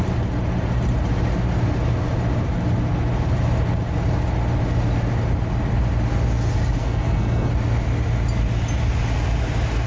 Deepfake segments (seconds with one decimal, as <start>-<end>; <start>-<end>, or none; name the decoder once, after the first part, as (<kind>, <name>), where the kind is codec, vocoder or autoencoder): 6.8-7.5 (codec, SNAC)